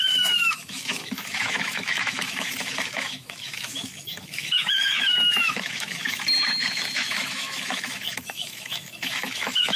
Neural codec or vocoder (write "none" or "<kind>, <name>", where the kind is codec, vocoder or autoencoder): autoencoder, DAC-VAE